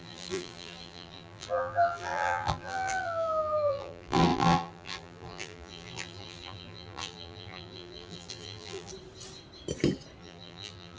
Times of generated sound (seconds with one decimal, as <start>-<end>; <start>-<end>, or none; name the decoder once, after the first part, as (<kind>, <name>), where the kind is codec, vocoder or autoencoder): 0.0-8.9 (vocoder, BigVGAN v2); 10.2-11.0